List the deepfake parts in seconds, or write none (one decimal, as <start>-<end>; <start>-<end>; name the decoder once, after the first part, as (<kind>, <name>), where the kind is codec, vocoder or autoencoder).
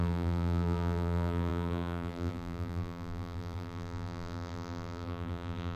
0.0-5.8 (vocoder, BigVGAN v2)